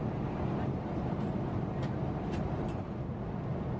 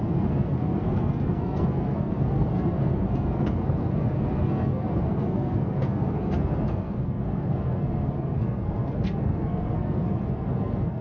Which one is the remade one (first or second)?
second